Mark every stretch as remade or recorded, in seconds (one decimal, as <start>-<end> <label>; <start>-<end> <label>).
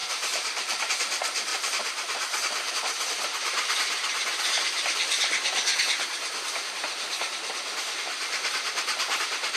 0.0-0.8 remade; 0.8-9.6 recorded